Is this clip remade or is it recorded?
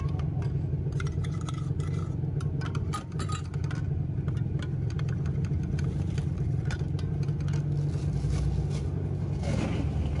recorded